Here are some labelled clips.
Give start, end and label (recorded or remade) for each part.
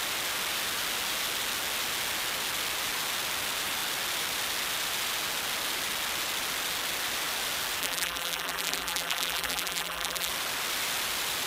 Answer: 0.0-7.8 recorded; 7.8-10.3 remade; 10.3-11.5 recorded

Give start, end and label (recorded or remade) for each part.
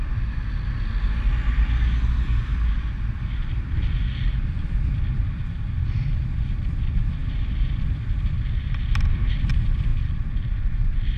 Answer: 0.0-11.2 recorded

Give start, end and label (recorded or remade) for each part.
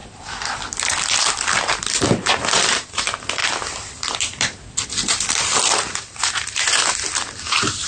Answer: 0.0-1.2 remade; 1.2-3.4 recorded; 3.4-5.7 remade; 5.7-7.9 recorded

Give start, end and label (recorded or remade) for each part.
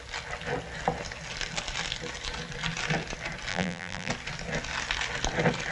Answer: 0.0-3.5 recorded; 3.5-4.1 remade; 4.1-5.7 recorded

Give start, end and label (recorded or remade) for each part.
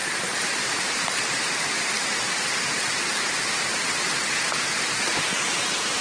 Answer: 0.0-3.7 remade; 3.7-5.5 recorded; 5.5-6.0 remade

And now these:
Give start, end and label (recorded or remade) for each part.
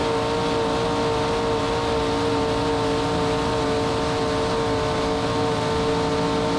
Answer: 0.0-6.6 recorded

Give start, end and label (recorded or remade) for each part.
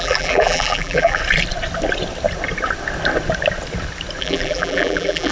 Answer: 0.0-1.2 remade; 1.2-4.2 recorded; 4.2-5.3 remade